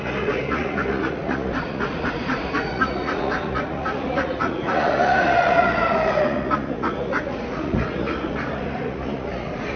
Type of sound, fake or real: fake